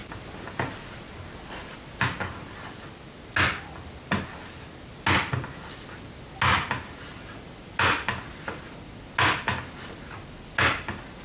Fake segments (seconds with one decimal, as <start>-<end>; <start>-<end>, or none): none